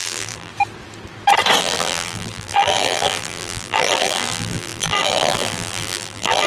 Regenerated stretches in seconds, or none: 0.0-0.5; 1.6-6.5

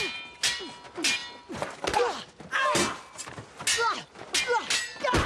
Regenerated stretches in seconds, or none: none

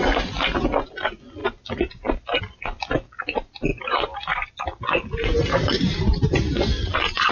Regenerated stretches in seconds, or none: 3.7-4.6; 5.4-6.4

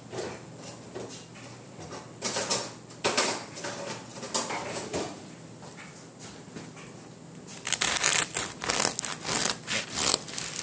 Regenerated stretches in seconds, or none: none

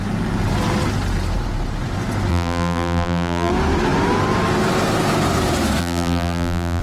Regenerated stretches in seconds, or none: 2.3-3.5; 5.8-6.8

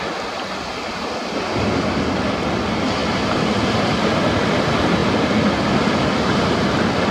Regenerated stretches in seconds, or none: none